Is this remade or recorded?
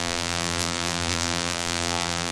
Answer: remade